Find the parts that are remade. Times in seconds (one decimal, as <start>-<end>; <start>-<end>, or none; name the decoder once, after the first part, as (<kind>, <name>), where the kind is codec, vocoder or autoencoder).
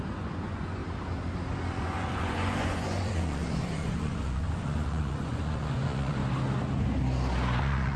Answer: 0.0-0.8 (vocoder, Vocos); 1.8-6.2; 7.6-8.0